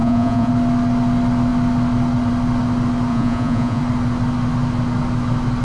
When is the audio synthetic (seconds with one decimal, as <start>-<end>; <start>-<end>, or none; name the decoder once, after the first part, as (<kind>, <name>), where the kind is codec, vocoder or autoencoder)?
0.0-0.5 (vocoder, Vocos); 3.1-3.8